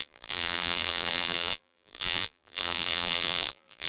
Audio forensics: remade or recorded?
remade